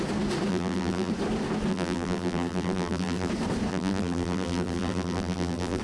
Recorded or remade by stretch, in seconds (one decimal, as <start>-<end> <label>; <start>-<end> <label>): 0.0-0.5 recorded; 0.5-1.1 remade; 1.1-1.7 recorded; 1.7-3.3 remade; 3.3-3.7 recorded; 3.7-5.8 remade